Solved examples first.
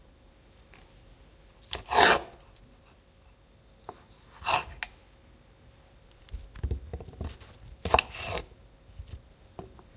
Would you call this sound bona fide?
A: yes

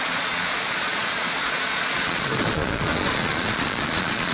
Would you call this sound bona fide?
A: no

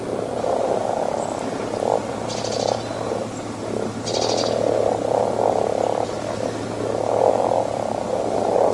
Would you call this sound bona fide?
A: yes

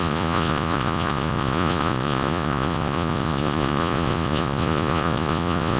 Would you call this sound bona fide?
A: no